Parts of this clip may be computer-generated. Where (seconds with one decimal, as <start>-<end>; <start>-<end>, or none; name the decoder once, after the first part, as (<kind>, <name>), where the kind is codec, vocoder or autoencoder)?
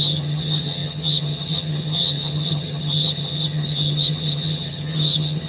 0.0-5.5 (vocoder, HiFi-GAN)